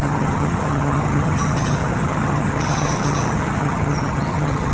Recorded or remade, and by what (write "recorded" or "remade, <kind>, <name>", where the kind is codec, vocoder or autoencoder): remade, vocoder, HiFi-GAN